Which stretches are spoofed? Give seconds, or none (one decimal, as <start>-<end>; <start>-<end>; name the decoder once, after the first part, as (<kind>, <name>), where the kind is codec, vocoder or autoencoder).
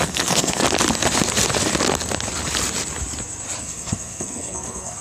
0.0-0.6 (codec, SNAC); 3.6-5.0